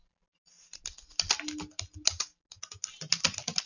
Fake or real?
real